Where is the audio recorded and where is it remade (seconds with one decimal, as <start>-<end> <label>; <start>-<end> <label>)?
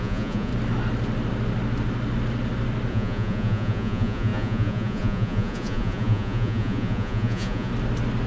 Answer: 0.0-0.5 remade; 0.5-2.9 recorded; 2.9-7.7 remade; 7.7-8.3 recorded